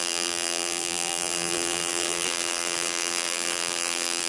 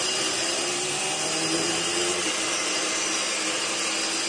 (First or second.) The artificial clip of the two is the first